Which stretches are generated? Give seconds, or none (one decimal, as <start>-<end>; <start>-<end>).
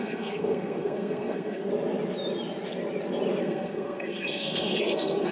0.0-1.7; 3.4-5.3